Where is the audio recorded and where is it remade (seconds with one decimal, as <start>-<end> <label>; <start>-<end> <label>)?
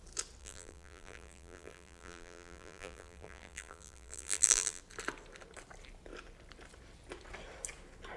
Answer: 0.0-0.4 recorded; 0.4-4.8 remade; 4.8-8.2 recorded